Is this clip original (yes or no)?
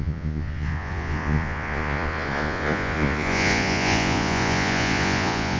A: no